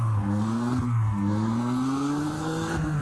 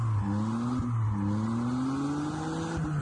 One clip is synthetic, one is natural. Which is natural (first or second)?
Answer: second